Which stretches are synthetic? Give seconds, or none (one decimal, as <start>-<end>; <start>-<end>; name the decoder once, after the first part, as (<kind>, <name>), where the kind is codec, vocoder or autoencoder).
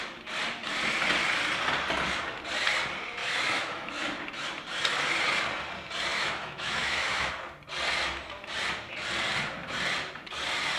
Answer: 3.2-3.9 (autoencoder, DAC-VAE); 6.1-7.3